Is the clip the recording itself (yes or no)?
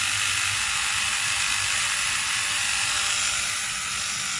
yes